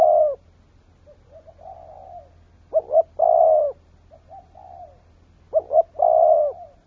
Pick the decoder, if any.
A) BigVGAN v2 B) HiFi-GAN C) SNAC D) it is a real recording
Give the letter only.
D